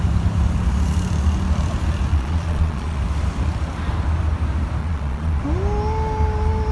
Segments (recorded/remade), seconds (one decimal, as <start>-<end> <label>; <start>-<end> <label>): 0.0-2.1 recorded; 2.1-3.0 remade; 3.0-4.8 recorded; 4.8-5.4 remade; 5.4-6.7 recorded